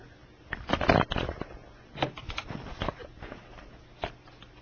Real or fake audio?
real